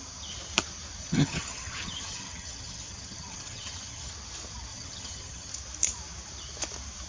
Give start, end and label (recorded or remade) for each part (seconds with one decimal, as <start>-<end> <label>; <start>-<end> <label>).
0.0-1.0 recorded; 1.0-4.1 remade; 4.1-4.7 recorded; 4.7-5.5 remade; 5.5-7.1 recorded